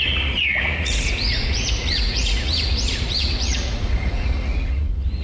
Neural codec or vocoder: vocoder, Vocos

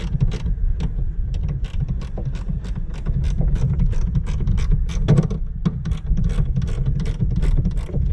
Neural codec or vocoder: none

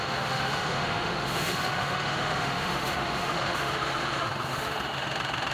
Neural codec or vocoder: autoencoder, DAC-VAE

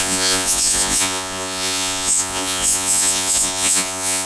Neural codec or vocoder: vocoder, Vocos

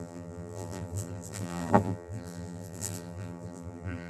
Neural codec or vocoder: vocoder, BigVGAN v2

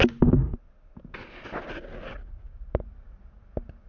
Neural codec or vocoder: none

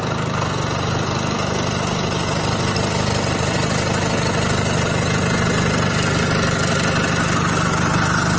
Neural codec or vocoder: none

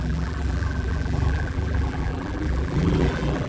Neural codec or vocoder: vocoder, BigVGAN v2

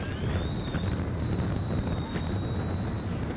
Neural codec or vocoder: none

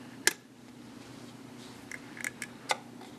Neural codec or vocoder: none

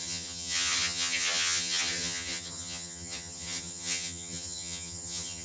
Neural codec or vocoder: vocoder, HiFi-GAN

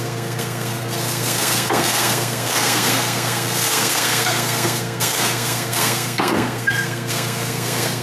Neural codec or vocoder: codec, SNAC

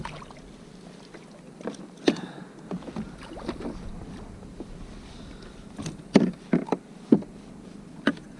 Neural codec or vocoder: none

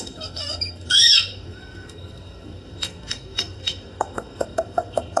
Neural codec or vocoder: codec, SNAC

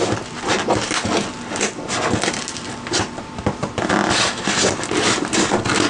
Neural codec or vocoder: none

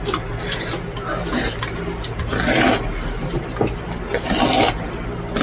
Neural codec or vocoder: none